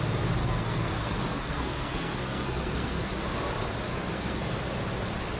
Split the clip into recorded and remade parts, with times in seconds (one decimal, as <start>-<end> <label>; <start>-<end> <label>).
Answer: 0.0-0.4 recorded; 0.4-3.1 remade; 3.1-3.9 recorded; 3.9-4.6 remade; 4.6-5.4 recorded